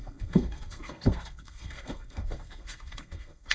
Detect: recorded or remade remade